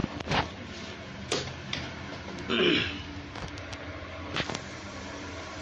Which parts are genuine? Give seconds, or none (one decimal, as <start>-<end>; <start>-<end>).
2.1-4.1